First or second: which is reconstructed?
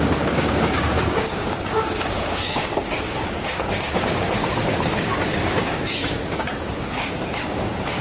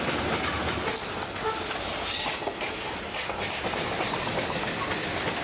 first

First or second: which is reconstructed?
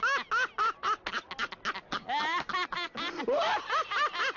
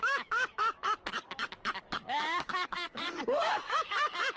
second